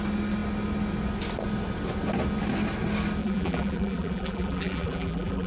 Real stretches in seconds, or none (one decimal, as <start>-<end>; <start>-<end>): 0.0-3.2